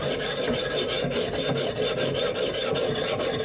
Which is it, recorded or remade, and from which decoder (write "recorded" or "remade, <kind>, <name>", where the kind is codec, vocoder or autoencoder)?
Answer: remade, vocoder, BigVGAN v2